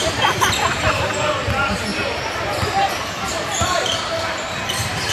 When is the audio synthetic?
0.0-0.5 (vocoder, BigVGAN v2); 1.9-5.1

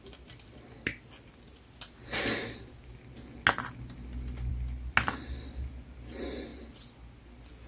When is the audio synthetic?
none